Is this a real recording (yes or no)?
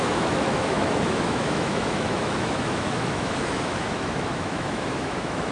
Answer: no